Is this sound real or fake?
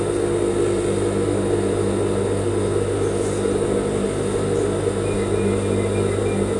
real